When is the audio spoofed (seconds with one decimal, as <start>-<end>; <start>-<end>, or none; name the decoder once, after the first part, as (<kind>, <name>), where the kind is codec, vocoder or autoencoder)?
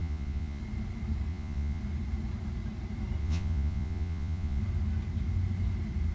0.0-0.6 (vocoder, Vocos); 1.3-1.8; 3.2-4.6